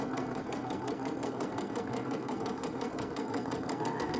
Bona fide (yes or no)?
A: no